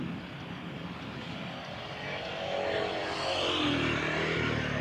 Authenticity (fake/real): real